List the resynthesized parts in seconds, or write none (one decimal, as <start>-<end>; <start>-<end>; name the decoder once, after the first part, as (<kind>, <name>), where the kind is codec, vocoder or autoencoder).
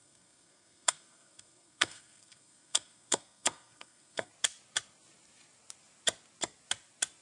0.0-4.3 (codec, SNAC)